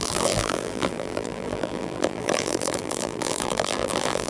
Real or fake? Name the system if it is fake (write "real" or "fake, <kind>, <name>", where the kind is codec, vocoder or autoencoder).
fake, vocoder, BigVGAN v2